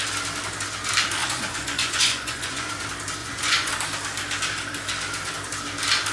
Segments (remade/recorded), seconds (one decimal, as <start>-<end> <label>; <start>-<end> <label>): 0.0-1.2 recorded; 1.2-2.7 remade; 2.7-3.2 recorded; 3.2-3.7 remade; 3.7-6.1 recorded